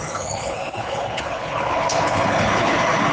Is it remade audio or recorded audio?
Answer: remade